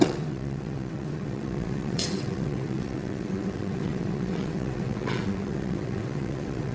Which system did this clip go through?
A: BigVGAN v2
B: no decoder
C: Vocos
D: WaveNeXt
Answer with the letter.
D